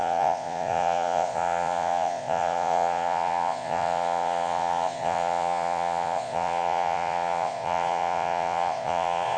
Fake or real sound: fake